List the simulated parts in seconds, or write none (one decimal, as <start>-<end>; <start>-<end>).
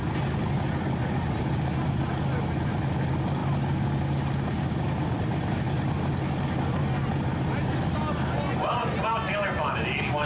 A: none